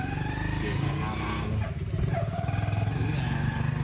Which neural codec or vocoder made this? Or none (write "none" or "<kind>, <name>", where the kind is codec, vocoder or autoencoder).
none